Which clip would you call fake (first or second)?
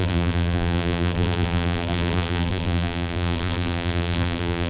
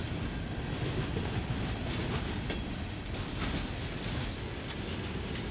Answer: first